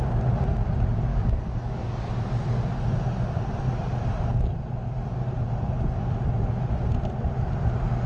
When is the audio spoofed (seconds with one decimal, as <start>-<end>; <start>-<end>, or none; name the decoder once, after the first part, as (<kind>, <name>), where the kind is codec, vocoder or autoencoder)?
1.1-2.1 (codec, DAC)